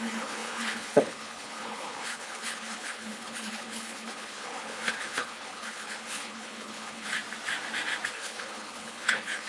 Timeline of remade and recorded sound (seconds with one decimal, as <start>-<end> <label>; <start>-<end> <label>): 0.0-7.1 remade; 7.1-8.1 recorded; 8.1-9.5 remade